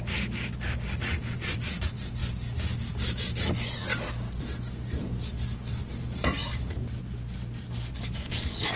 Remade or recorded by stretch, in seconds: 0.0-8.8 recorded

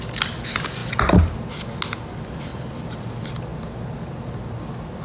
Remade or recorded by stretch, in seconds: 0.0-5.0 recorded

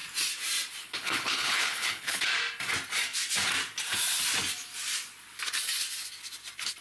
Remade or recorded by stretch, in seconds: 0.0-0.8 recorded; 0.8-2.3 remade; 2.3-6.8 recorded

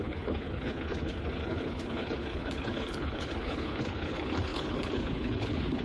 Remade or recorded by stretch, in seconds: 0.0-5.8 remade